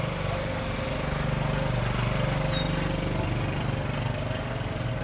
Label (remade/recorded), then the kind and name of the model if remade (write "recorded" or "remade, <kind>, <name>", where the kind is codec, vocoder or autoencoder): recorded